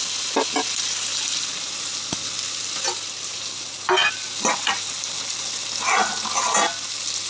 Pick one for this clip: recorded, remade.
recorded